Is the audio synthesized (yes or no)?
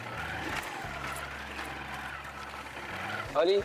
no